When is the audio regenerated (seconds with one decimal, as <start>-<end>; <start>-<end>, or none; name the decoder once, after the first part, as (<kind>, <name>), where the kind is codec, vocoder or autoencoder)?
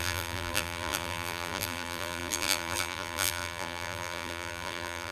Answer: 0.0-5.1 (vocoder, BigVGAN v2)